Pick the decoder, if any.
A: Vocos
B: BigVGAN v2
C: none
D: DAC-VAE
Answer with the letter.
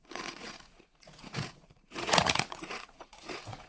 A